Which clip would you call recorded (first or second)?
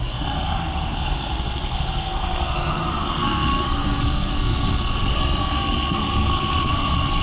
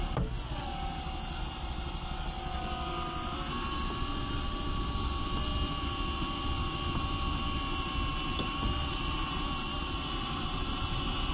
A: second